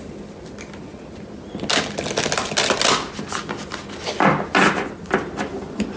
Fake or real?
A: real